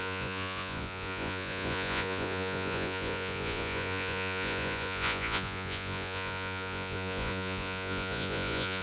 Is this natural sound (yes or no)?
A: no